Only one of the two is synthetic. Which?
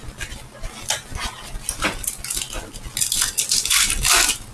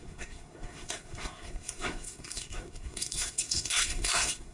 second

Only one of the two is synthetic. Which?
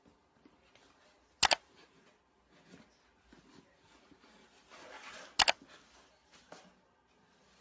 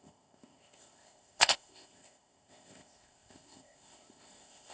second